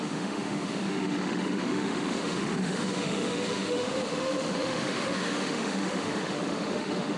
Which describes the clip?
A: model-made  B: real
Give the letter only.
A